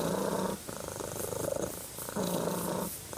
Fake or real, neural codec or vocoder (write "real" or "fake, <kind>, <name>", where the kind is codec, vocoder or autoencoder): real